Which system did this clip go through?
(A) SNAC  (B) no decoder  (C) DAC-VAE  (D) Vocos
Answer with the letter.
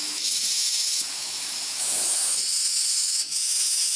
C